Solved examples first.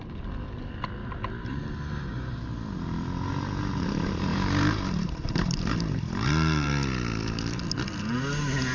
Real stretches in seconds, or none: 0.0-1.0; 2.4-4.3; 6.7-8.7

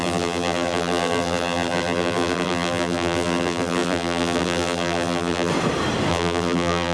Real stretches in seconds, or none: 5.5-6.1

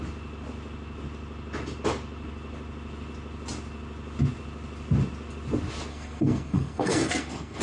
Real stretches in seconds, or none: 0.0-5.9

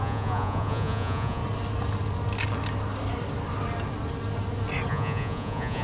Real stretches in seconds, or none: 1.4-4.9

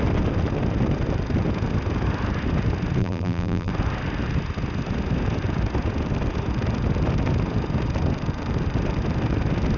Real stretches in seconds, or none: 0.0-3.0; 3.7-9.8

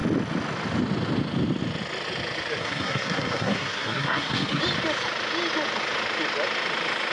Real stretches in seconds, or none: 0.0-2.6; 4.6-7.1

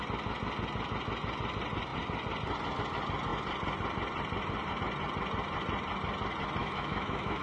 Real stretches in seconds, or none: 0.0-6.6